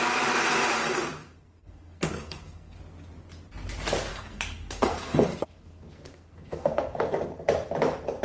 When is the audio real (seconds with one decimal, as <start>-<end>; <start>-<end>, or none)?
0.0-1.2; 2.8-4.1; 7.3-8.2